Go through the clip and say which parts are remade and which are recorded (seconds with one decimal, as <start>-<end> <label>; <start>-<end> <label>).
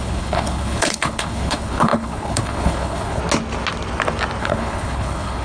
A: 0.0-3.2 remade; 3.2-4.4 recorded; 4.4-5.4 remade